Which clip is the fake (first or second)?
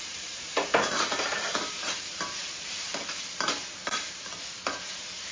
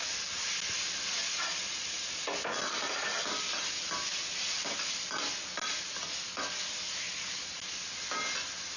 first